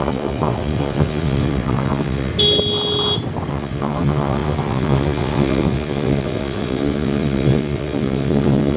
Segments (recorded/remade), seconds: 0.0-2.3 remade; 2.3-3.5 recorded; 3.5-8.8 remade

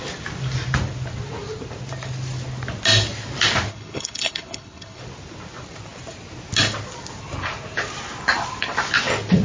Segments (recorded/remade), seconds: 0.0-3.7 recorded; 3.7-5.0 remade; 5.0-9.4 recorded

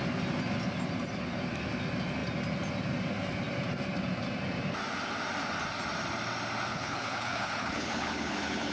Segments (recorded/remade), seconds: 0.0-6.7 recorded; 6.7-8.7 remade

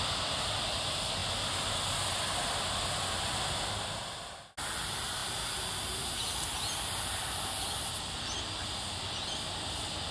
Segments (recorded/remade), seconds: 0.0-10.1 recorded

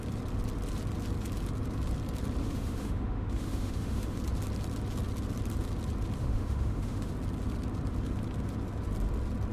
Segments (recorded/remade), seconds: 0.0-2.4 recorded; 2.4-4.2 remade; 4.2-6.2 recorded; 6.2-7.1 remade; 7.1-9.5 recorded